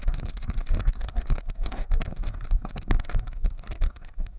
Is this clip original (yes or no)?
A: no